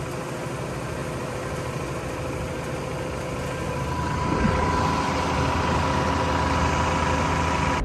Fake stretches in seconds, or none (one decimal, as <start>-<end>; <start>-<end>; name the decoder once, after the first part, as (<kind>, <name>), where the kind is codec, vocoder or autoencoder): 1.0-2.7 (vocoder, BigVGAN v2)